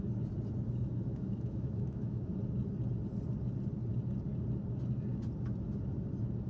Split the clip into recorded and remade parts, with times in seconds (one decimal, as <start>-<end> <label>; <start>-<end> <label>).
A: 0.0-1.1 recorded; 1.1-2.3 remade; 2.3-6.5 recorded